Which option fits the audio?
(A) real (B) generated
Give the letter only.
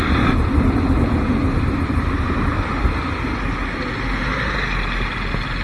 A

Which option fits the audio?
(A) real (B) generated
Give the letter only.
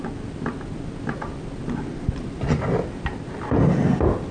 A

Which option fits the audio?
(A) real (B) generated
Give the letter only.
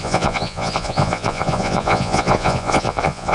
B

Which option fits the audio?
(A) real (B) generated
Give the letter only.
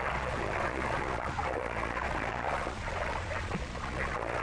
B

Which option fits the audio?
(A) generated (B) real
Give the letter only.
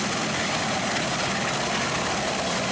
B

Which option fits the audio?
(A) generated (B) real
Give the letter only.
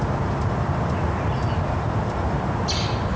B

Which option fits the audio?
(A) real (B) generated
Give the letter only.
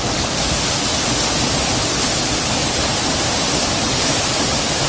A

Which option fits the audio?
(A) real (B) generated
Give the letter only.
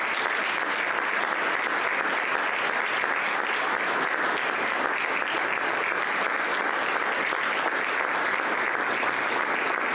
A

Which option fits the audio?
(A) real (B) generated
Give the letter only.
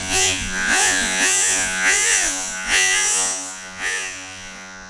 B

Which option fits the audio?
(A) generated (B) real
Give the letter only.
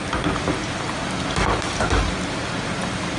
B